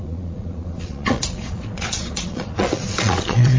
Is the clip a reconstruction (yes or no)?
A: yes